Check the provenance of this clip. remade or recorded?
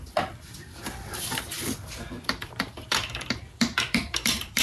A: remade